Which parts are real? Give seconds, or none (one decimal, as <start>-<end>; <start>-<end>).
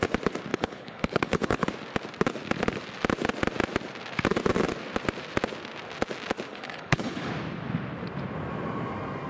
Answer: 0.0-0.5; 1.7-6.5; 7.3-9.3